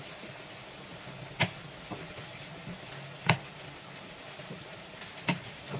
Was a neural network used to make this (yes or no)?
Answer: no